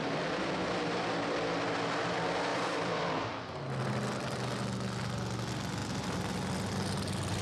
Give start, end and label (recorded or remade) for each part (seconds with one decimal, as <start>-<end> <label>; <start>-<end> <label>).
0.0-0.7 remade; 0.7-2.5 recorded; 2.5-3.3 remade; 3.3-7.4 recorded